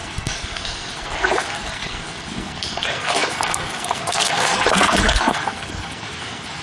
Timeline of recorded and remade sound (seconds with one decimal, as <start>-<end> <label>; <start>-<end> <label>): 0.0-6.6 remade